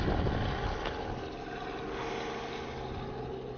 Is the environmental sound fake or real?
real